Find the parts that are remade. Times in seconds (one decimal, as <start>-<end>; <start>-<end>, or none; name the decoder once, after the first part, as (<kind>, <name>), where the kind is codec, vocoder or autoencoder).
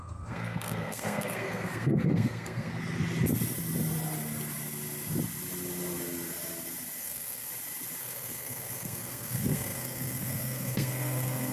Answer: 0.0-2.7 (codec, SNAC); 7.0-7.5; 8.0-11.5